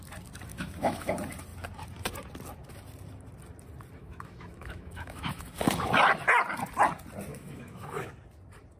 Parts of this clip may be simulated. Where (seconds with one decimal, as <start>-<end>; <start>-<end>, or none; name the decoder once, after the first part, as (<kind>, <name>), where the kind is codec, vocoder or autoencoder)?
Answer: 0.5-1.1 (autoencoder, DAC-VAE); 4.0-5.9; 7.3-8.1